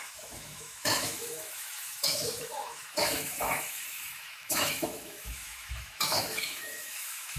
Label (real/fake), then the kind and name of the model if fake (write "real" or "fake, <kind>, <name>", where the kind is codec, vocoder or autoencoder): fake, autoencoder, DAC-VAE